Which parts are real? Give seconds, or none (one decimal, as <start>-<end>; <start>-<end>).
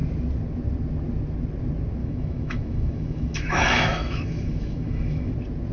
0.0-2.0; 5.3-5.7